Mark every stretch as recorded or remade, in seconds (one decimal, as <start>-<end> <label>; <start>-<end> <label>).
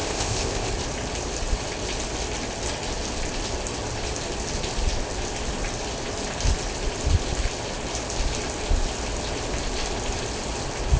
0.0-0.7 remade; 0.7-11.0 recorded